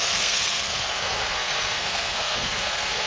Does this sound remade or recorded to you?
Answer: remade